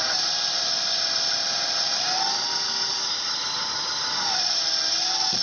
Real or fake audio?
fake